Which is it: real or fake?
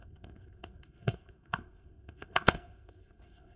fake